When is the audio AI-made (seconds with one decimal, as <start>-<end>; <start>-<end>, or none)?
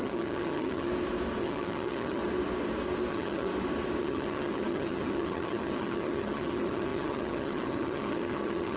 0.0-0.9; 1.4-2.2; 3.1-3.5; 4.0-8.8